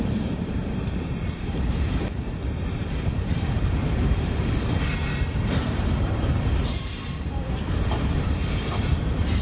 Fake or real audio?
fake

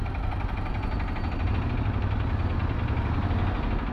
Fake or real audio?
real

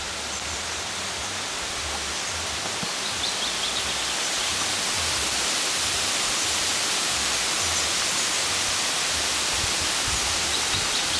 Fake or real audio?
real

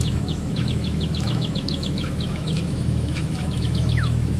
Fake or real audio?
fake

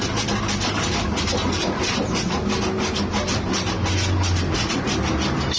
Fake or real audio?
real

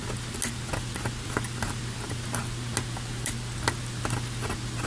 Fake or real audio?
real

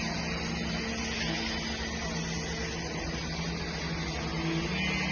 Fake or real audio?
real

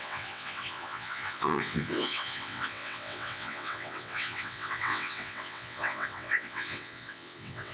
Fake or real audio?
fake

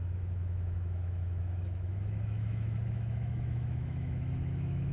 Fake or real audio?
fake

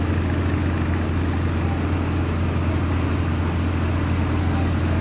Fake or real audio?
real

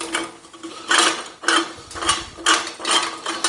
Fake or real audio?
real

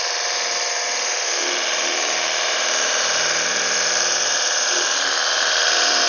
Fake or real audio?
fake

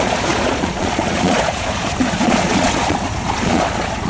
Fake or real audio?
fake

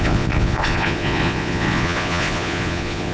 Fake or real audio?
fake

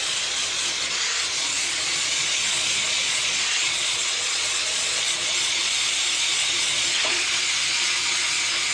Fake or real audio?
fake